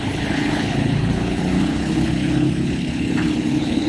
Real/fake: fake